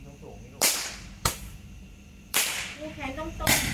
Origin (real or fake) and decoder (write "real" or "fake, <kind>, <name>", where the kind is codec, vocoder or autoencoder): fake, vocoder, BigVGAN v2